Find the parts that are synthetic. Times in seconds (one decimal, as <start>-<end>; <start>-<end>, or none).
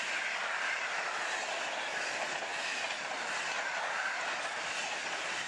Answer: none